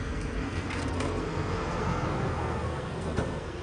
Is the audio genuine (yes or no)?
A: no